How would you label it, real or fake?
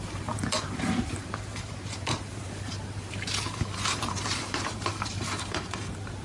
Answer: fake